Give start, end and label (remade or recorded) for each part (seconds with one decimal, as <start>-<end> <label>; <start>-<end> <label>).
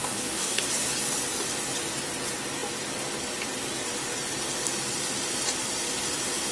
0.0-0.6 remade; 0.6-6.5 recorded